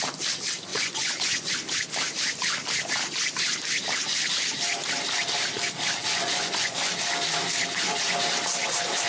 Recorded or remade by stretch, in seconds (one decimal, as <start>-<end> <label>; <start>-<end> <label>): 0.0-0.7 recorded; 0.7-1.5 remade; 1.5-6.0 recorded; 6.0-6.9 remade; 6.9-9.1 recorded

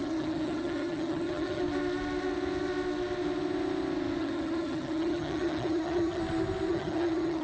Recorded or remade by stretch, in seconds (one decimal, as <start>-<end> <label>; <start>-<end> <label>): 0.0-1.6 remade; 1.6-4.2 recorded; 4.2-6.2 remade; 6.2-6.7 recorded; 6.7-7.4 remade

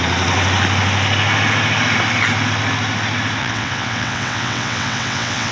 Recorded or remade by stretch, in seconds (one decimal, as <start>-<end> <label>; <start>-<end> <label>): 0.0-3.4 recorded; 3.4-5.5 remade

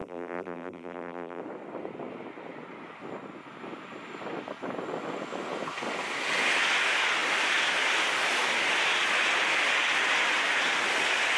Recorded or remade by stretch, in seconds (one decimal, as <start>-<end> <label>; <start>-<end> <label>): 0.0-1.4 remade; 1.4-11.4 recorded

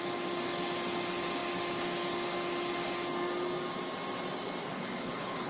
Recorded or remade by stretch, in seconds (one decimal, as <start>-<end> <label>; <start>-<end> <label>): 0.0-4.6 recorded; 4.6-5.5 remade

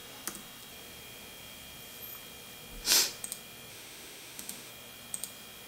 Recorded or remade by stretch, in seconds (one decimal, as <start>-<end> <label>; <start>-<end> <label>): 0.0-3.7 recorded; 3.7-4.7 remade; 4.7-5.7 recorded

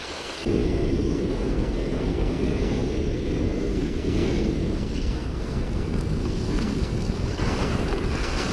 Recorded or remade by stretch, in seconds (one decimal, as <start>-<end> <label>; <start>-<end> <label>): 0.0-8.5 remade